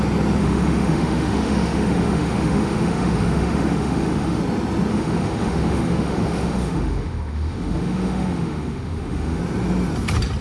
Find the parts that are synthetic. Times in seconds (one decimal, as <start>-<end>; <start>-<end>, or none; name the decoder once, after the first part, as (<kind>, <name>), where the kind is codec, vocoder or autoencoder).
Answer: 0.4-4.4 (autoencoder, DAC-VAE); 4.9-9.4